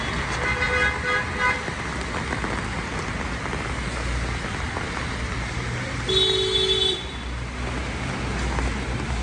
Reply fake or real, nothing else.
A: real